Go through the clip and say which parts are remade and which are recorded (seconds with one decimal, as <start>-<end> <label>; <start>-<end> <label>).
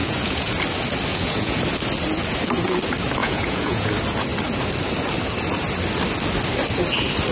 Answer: 0.0-0.5 remade; 0.5-1.1 recorded; 1.1-1.6 remade; 1.6-3.2 recorded; 3.2-3.9 remade; 3.9-7.3 recorded